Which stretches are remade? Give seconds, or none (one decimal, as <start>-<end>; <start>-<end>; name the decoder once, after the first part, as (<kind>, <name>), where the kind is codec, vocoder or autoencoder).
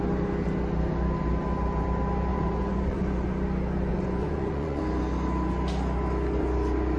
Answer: 2.3-3.3 (vocoder, Vocos); 3.9-4.8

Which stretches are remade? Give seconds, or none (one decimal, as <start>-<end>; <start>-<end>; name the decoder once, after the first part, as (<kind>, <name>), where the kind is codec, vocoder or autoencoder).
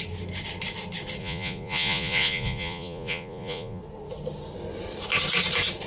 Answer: 1.2-3.8 (vocoder, Vocos)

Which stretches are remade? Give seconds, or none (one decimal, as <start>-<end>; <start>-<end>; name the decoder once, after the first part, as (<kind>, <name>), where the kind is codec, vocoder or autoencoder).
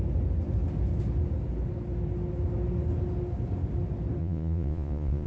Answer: 4.2-5.3 (vocoder, Vocos)